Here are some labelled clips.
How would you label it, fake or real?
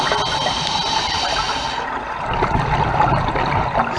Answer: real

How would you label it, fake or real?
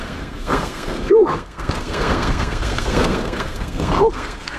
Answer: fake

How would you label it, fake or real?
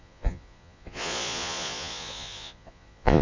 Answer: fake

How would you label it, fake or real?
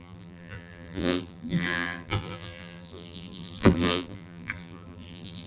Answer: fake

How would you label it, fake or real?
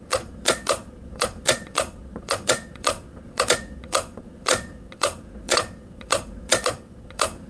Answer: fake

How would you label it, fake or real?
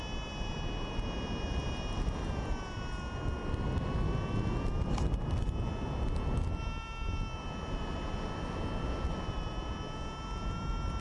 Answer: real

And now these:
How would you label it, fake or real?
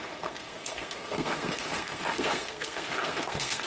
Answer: fake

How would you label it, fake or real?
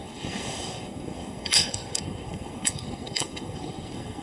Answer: fake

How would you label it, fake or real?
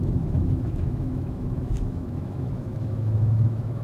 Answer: fake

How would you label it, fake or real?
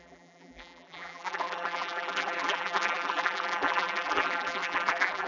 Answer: fake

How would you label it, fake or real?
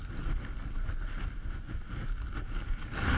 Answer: real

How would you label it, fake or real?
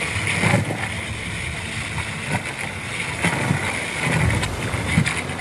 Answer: real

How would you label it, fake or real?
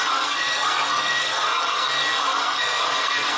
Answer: fake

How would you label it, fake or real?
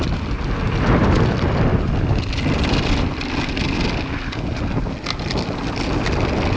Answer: real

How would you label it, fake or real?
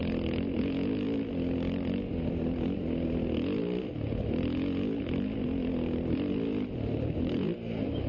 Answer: real